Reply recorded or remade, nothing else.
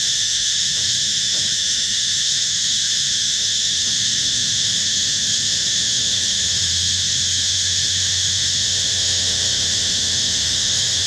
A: remade